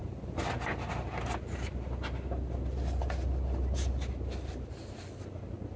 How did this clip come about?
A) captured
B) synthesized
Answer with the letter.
A